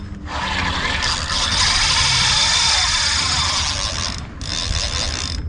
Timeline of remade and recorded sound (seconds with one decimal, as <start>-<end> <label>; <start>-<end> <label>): 0.0-5.5 recorded